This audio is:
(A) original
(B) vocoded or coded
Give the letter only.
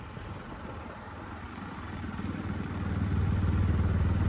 A